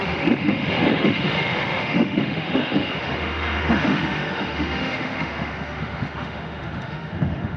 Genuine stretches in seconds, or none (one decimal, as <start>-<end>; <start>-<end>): none